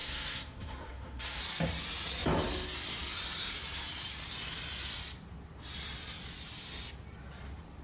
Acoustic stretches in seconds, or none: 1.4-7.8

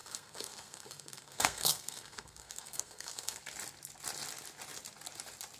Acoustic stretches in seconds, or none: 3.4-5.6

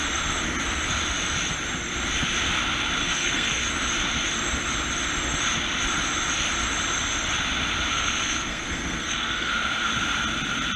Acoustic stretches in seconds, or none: 0.0-3.0; 3.6-7.9; 9.5-10.8

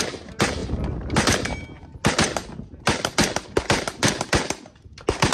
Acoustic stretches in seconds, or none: 0.0-5.3

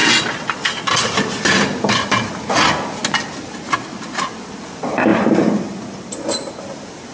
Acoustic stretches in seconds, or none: 0.0-7.1

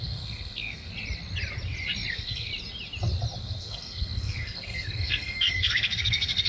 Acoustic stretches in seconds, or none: 0.9-2.1; 2.5-3.4

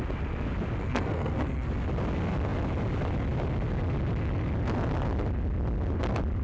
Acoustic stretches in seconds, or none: 0.0-0.8; 1.7-6.4